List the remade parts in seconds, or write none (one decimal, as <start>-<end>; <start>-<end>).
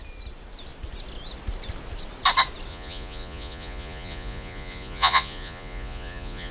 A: 2.7-6.5